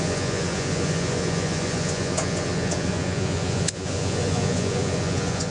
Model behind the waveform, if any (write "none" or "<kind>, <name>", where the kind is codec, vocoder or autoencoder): vocoder, Vocos